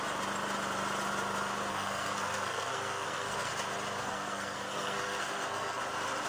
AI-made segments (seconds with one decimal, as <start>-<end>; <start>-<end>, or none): 1.7-3.5; 4.0-5.8